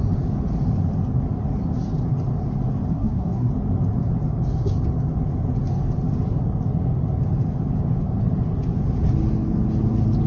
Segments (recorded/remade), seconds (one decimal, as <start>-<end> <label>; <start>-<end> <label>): 0.0-2.9 recorded; 2.9-3.5 remade; 3.5-10.3 recorded